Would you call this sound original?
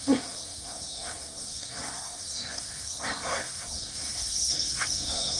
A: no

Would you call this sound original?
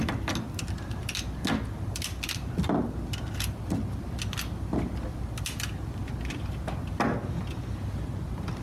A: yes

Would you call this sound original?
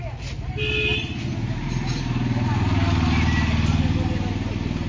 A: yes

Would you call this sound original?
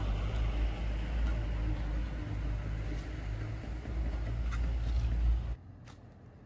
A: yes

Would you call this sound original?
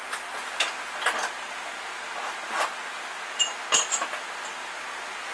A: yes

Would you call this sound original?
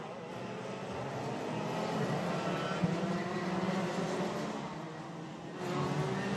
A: yes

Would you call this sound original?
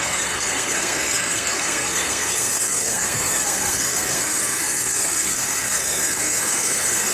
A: no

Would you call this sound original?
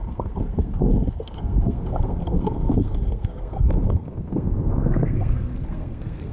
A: no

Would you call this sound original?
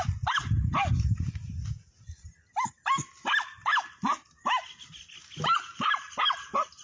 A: yes